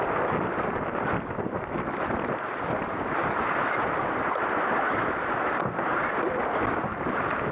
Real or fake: real